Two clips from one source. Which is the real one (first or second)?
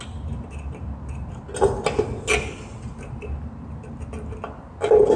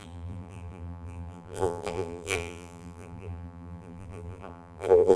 first